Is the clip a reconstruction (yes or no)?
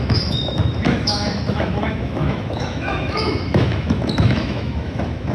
yes